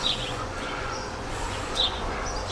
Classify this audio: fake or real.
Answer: fake